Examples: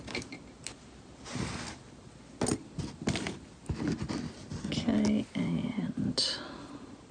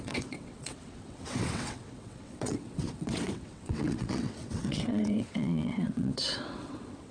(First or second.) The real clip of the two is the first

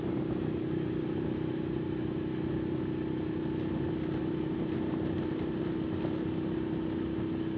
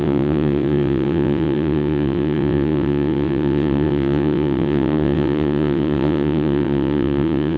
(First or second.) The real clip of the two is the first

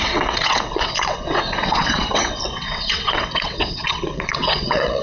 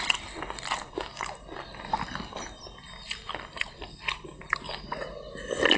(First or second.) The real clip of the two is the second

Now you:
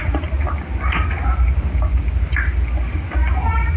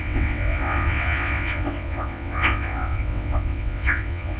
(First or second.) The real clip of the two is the first